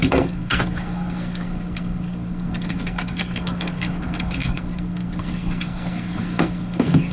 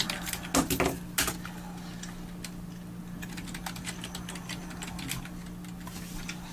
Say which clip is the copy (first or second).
first